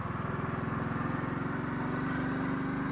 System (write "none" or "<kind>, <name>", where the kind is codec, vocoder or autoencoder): none